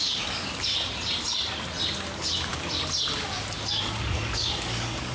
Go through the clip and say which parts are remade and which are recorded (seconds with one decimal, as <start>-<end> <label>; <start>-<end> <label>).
0.0-0.7 remade; 0.7-3.8 recorded; 3.8-5.1 remade